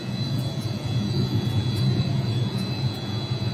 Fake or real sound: fake